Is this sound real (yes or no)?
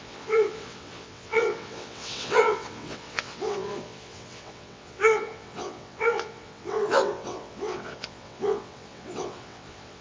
no